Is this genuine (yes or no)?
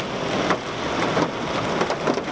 yes